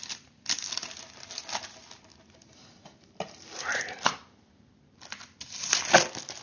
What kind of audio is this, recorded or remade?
recorded